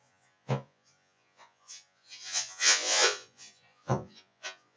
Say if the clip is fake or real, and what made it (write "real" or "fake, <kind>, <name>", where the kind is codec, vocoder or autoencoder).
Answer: fake, vocoder, Vocos